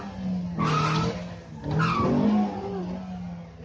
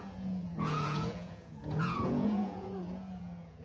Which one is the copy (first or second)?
second